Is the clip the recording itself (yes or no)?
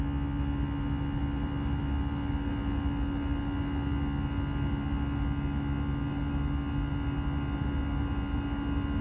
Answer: yes